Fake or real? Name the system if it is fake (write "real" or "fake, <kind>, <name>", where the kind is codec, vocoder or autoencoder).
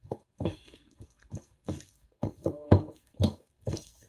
fake, codec, SNAC